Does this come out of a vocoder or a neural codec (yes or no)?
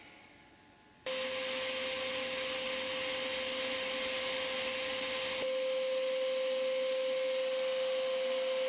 no